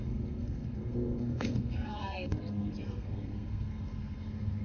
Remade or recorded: remade